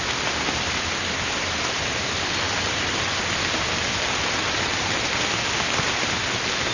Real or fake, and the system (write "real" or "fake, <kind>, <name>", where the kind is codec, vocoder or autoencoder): real